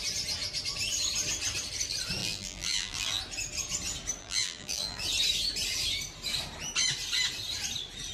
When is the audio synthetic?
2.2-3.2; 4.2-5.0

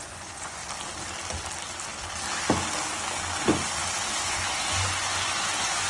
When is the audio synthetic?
0.0-0.6; 4.1-5.9

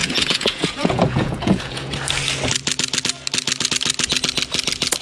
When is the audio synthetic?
0.0-1.9

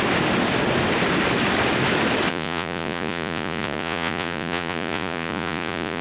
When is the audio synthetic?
2.3-6.0

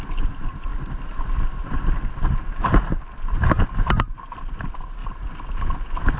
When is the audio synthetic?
none

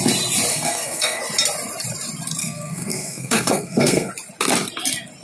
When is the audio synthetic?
0.5-1.2; 2.4-4.1